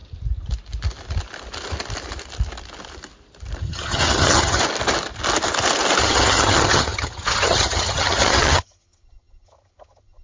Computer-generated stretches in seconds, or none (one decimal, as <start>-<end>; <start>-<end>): 3.6-4.6; 6.0-10.2